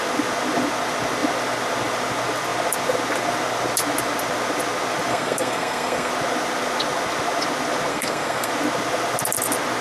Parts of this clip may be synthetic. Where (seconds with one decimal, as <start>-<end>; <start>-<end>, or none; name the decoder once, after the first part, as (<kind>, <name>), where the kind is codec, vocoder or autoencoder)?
5.1-6.1 (codec, SNAC); 7.9-8.5